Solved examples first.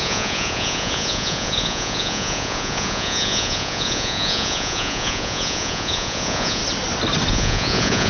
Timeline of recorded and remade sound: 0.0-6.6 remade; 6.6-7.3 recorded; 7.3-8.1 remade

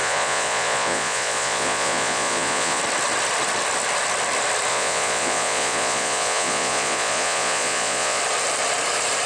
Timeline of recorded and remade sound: 0.0-2.8 remade; 2.8-4.7 recorded; 4.7-8.2 remade; 8.2-9.3 recorded

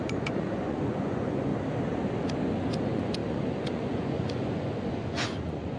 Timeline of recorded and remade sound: 0.0-1.5 remade; 1.5-2.8 recorded; 2.8-5.8 remade

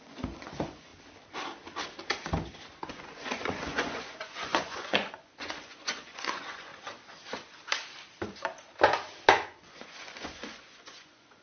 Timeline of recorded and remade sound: 0.0-0.9 remade; 0.9-2.8 recorded; 2.8-6.7 remade; 6.7-9.3 recorded; 9.3-11.4 remade

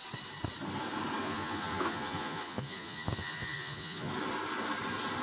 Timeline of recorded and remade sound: 0.0-1.2 recorded; 1.2-4.1 remade; 4.1-5.2 recorded

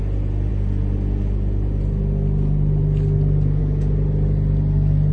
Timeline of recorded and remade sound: 0.0-5.1 recorded

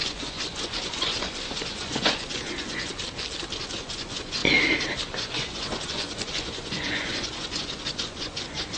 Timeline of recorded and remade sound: 0.0-3.0 remade; 3.0-3.6 recorded; 3.6-4.4 remade; 4.4-5.2 recorded; 5.2-8.8 remade